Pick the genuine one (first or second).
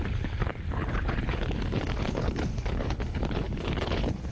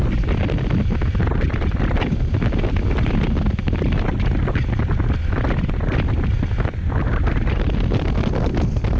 second